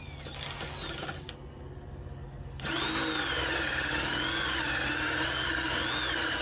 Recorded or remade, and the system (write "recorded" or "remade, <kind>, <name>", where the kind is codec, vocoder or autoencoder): recorded